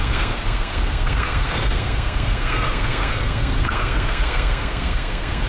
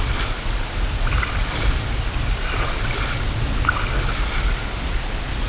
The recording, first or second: second